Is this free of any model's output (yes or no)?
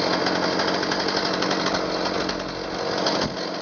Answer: yes